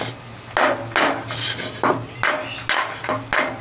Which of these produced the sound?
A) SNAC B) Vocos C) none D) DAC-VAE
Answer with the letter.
C